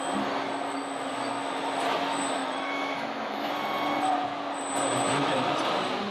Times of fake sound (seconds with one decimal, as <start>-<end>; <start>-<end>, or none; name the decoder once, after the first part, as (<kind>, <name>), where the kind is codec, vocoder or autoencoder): 2.4-3.5 (autoencoder, DAC-VAE)